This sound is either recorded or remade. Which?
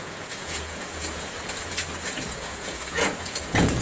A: remade